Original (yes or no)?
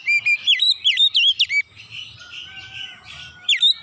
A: yes